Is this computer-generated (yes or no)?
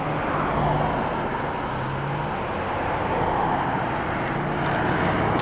no